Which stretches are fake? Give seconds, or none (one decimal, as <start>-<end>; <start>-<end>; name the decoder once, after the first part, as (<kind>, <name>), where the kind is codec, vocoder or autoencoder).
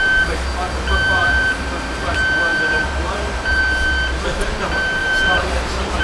1.2-2.0 (vocoder, BigVGAN v2); 2.5-3.6; 5.0-6.0